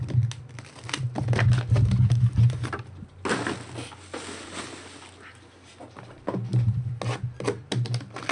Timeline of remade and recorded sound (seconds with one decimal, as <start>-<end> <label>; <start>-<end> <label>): 0.0-8.3 recorded